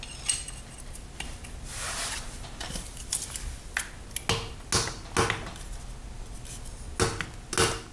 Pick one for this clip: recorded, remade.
recorded